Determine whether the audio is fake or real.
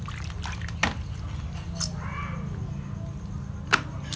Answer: real